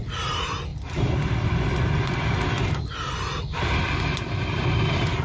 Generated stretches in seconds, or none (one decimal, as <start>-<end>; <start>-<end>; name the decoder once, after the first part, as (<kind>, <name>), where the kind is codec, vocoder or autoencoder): none